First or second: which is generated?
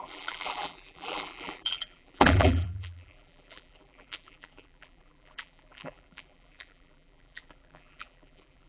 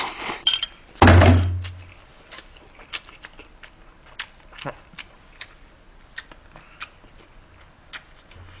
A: first